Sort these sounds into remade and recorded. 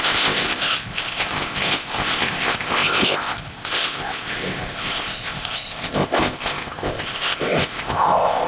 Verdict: remade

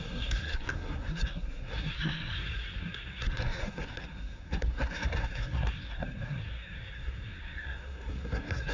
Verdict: remade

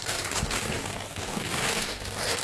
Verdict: remade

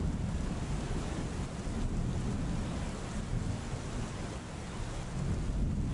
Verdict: recorded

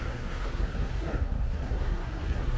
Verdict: remade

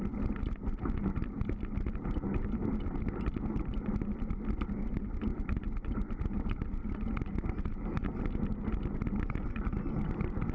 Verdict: recorded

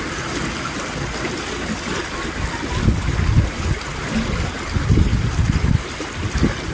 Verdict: recorded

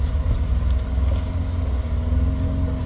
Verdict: recorded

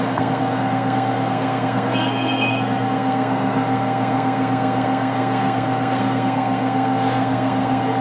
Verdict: remade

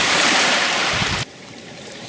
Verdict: remade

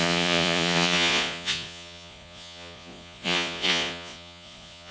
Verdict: remade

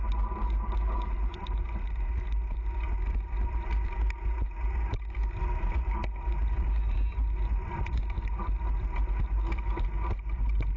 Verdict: recorded